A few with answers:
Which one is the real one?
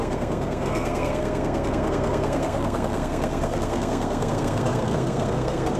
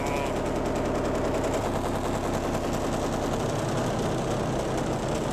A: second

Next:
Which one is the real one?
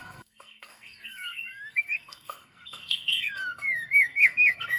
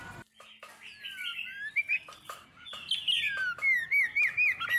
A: second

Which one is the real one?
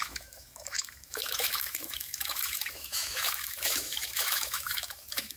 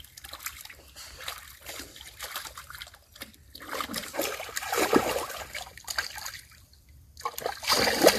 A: second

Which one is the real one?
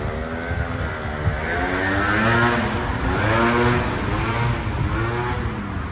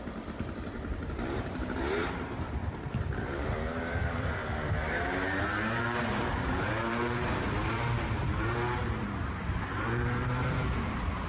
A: first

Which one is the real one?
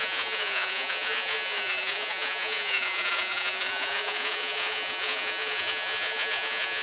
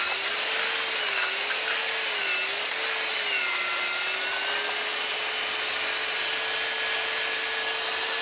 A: second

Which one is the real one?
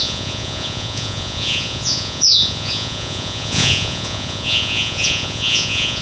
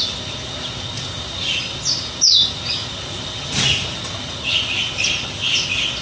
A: second